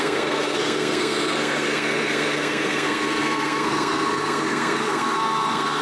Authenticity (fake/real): fake